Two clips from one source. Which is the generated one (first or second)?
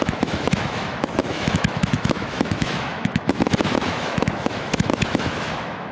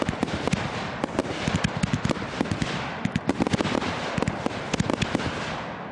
first